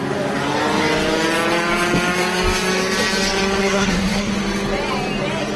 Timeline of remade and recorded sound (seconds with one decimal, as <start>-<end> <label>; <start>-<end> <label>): 0.0-3.6 recorded; 3.6-4.3 remade; 4.3-5.6 recorded